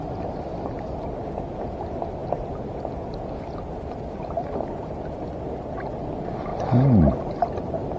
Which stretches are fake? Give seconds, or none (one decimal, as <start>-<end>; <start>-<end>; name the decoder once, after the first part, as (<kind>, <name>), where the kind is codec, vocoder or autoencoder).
none